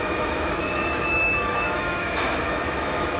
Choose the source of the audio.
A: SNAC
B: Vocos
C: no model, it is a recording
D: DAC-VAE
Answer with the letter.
D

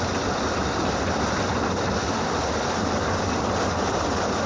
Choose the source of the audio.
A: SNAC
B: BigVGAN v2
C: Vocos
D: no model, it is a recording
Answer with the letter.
D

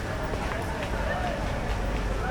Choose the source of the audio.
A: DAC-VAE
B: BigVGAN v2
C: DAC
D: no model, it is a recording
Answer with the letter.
D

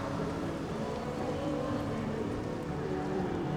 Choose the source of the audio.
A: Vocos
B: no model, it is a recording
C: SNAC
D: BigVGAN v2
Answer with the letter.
D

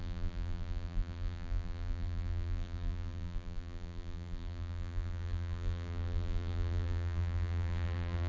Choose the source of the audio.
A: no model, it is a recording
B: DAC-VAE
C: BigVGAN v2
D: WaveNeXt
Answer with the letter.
C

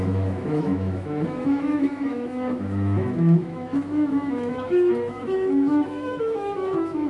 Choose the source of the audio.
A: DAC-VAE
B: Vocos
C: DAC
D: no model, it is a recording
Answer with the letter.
A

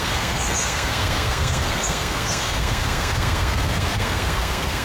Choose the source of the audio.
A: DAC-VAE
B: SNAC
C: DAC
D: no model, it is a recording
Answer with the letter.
B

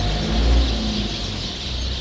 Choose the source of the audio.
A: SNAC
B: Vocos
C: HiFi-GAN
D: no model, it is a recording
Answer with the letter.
D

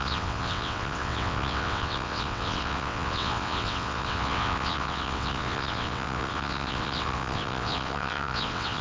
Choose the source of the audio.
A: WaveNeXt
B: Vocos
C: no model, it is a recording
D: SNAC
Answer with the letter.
A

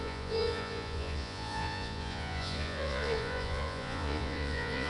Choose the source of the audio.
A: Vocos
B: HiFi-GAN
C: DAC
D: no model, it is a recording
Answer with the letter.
A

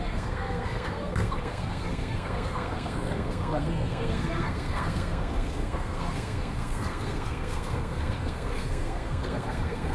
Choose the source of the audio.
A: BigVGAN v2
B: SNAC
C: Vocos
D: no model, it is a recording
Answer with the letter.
B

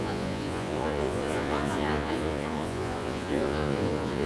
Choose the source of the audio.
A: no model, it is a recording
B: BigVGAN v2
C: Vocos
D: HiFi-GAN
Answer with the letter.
C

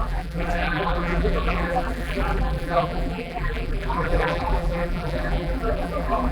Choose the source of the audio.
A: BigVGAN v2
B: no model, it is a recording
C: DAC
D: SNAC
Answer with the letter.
A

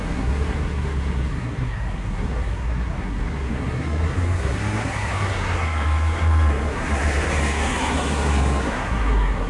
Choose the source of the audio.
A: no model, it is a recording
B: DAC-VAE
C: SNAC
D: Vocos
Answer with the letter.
C